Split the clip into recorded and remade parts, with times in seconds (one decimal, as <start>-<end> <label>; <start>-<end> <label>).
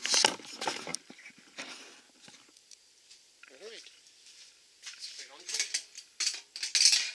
0.0-0.9 recorded; 0.9-5.2 remade; 5.2-7.1 recorded